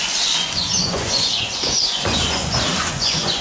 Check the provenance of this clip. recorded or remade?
remade